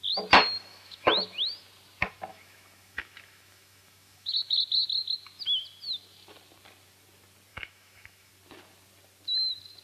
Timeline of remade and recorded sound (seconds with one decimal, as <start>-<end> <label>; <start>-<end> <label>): 0.0-0.7 recorded; 0.7-1.5 remade; 1.5-2.3 recorded; 2.3-4.6 remade; 4.6-7.5 recorded; 7.5-8.3 remade; 8.3-9.8 recorded